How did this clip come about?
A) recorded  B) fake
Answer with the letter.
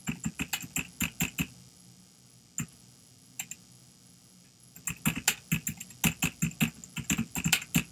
A